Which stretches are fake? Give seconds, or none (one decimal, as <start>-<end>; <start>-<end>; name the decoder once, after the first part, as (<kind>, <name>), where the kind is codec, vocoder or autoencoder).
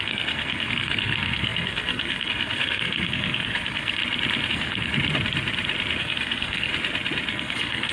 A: 0.0-4.0 (codec, SNAC); 4.5-4.9; 6.0-6.7; 7.3-7.9